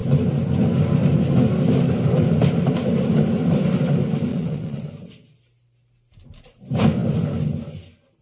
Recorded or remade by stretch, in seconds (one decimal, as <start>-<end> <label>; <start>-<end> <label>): 0.0-4.3 recorded; 4.3-4.9 remade; 4.9-8.2 recorded